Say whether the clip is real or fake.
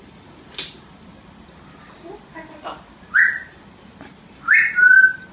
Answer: real